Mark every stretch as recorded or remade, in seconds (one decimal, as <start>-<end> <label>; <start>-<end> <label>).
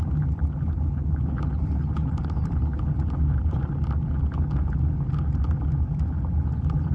0.0-6.9 recorded